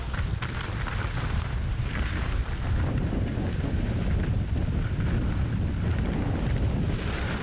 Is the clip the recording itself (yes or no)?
yes